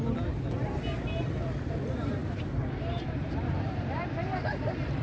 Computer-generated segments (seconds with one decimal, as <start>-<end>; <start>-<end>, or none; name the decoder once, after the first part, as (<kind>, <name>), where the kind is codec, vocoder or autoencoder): 0.0-5.0 (vocoder, BigVGAN v2)